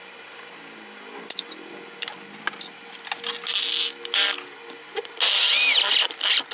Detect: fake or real real